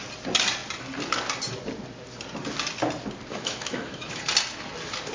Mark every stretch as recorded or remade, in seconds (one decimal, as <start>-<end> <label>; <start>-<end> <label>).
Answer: 0.0-3.3 recorded; 3.3-4.2 remade; 4.2-5.1 recorded